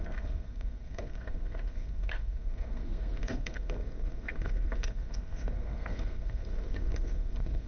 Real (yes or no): no